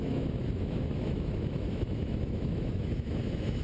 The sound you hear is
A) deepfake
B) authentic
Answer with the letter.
A